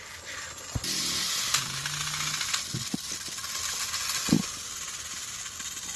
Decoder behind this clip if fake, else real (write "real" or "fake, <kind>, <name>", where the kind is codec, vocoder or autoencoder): real